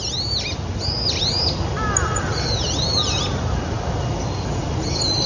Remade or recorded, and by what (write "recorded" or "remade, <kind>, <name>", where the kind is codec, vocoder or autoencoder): recorded